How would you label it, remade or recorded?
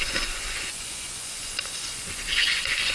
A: remade